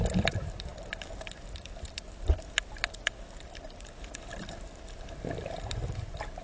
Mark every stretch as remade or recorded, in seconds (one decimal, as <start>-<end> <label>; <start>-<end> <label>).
0.0-6.4 recorded

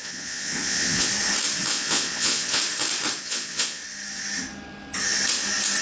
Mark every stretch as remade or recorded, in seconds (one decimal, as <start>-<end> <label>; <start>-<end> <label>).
0.0-1.1 remade; 1.1-1.7 recorded; 1.7-2.6 remade; 2.6-3.2 recorded; 3.2-3.8 remade; 3.8-5.8 recorded

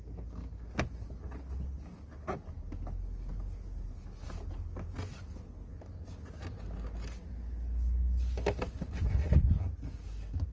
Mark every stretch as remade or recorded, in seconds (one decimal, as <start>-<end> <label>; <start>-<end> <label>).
0.0-10.5 recorded

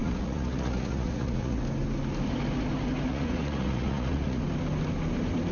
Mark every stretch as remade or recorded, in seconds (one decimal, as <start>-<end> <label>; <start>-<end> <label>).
0.0-1.6 remade; 1.6-3.1 recorded; 3.1-4.4 remade; 4.4-5.5 recorded